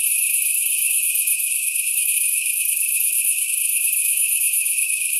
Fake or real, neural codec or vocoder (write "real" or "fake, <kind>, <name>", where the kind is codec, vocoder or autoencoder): fake, autoencoder, DAC-VAE